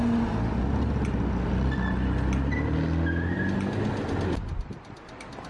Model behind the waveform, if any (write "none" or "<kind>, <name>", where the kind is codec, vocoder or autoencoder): none